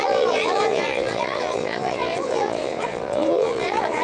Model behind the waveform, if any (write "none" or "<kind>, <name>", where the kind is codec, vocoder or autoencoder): vocoder, Vocos